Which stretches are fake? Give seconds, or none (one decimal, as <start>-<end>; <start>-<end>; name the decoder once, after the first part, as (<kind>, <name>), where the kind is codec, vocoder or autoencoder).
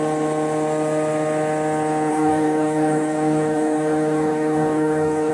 2.1-5.3 (codec, DAC)